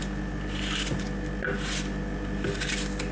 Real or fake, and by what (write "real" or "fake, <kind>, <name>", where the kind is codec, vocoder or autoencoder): real